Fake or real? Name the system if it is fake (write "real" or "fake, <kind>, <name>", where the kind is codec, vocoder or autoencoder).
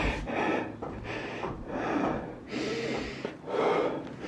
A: fake, vocoder, BigVGAN v2